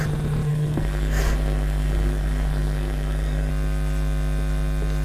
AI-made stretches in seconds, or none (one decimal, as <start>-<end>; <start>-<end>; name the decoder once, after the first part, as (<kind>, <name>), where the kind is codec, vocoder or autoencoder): 0.5-3.5 (codec, SNAC)